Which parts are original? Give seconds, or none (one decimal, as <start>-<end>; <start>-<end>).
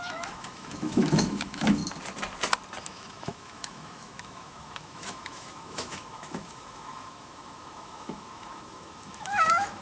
1.8-2.8